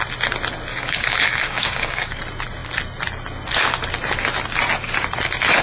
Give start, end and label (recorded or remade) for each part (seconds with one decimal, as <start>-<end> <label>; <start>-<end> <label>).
0.0-0.7 recorded; 0.7-2.2 remade; 2.2-5.6 recorded